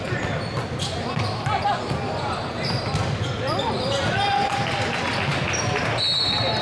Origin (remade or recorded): recorded